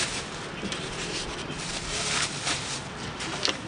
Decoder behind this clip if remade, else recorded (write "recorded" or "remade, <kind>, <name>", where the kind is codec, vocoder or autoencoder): recorded